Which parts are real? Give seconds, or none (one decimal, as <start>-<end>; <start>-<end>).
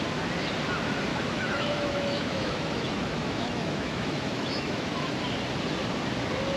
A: 0.0-1.1; 5.1-6.6